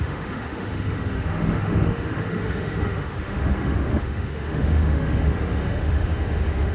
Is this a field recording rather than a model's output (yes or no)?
no